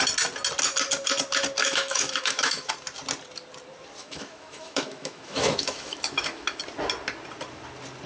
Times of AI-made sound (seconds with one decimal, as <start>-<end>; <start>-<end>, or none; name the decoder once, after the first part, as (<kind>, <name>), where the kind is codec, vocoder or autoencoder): 1.6-2.7 (autoencoder, DAC-VAE); 4.0-6.6